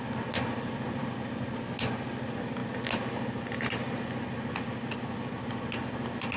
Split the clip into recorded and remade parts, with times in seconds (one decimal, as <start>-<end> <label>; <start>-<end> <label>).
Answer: 0.0-6.4 recorded